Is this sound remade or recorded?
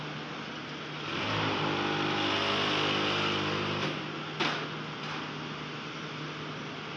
recorded